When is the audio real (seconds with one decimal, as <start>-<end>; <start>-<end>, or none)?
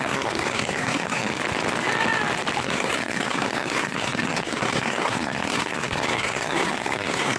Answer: 1.3-2.6